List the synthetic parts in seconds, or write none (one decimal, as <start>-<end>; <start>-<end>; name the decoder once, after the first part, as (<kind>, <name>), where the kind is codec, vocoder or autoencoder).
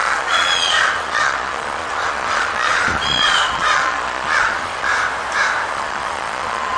0.0-4.9 (vocoder, Vocos); 5.7-6.8